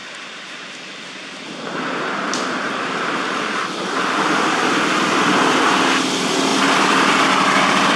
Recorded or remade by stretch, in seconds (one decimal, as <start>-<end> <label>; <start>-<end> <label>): 0.0-6.5 recorded; 6.5-7.1 remade; 7.1-8.0 recorded